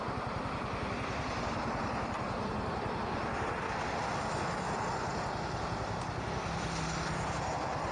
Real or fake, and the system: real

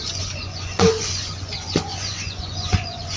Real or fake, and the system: fake, vocoder, Vocos